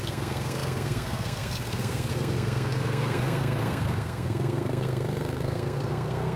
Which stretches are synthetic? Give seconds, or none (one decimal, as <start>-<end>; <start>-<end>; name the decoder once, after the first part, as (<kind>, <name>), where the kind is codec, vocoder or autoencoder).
0.0-6.4 (codec, SNAC)